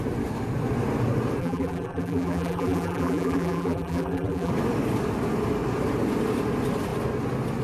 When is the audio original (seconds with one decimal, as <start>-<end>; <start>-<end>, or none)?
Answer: 0.0-1.4; 4.5-7.6